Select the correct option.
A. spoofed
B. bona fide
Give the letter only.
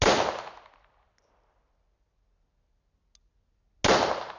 B